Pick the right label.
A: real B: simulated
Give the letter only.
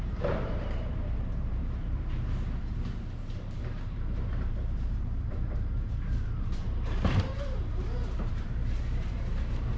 B